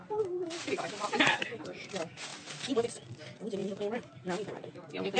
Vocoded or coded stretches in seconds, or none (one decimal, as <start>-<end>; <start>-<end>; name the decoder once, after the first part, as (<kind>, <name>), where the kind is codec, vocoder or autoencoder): 0.0-1.9 (vocoder, BigVGAN v2); 2.3-3.2